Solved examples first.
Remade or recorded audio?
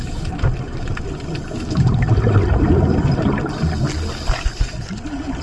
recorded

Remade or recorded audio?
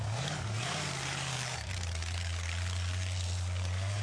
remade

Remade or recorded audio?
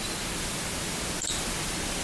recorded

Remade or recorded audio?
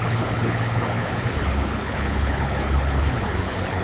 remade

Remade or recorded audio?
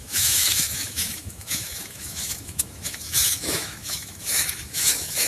remade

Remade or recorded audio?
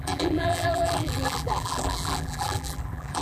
remade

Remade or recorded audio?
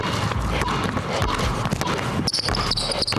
recorded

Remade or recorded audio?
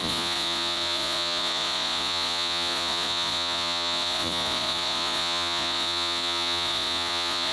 remade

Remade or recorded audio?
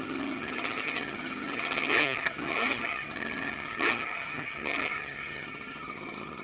remade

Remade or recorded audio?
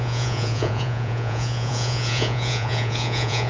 remade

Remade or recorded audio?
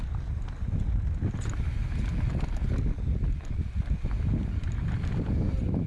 recorded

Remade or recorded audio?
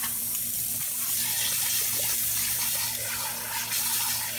recorded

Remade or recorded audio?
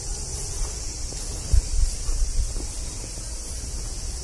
recorded